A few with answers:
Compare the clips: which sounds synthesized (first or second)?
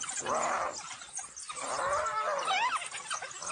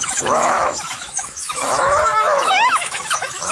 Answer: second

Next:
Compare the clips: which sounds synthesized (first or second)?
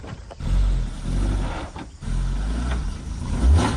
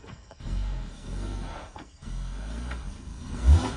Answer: second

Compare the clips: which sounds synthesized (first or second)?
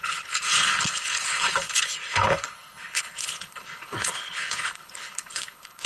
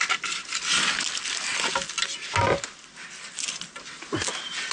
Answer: first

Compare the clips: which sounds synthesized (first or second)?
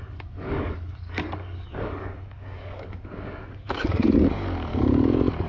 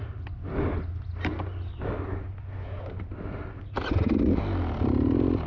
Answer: first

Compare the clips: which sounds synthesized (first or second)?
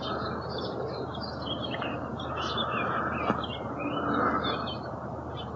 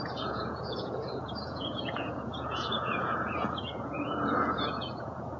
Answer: second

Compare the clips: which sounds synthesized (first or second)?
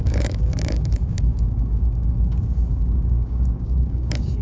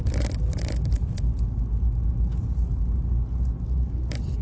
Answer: first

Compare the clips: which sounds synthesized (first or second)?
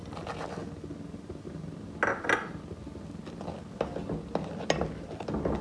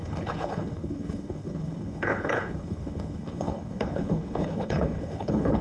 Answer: second